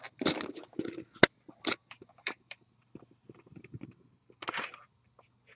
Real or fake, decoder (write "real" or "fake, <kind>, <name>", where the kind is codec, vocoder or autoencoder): real